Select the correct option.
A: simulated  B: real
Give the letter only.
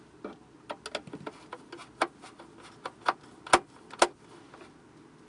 B